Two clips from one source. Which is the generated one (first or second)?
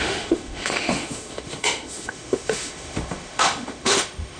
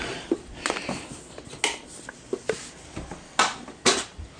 first